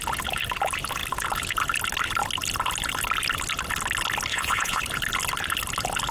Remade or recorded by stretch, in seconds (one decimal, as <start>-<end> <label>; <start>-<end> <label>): 0.0-4.3 recorded; 4.3-4.8 remade; 4.8-6.1 recorded